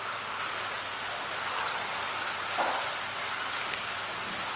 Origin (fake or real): real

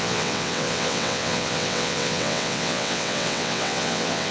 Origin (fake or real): fake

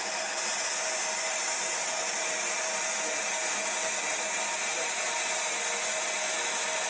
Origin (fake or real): real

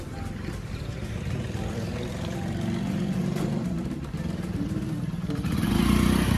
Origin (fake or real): fake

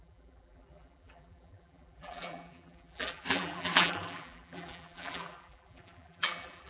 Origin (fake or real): fake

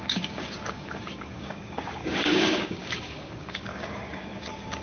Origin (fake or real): fake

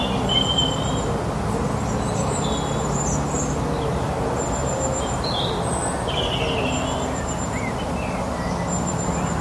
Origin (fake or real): real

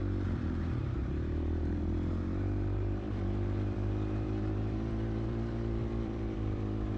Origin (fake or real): fake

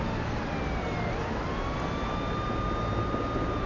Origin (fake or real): real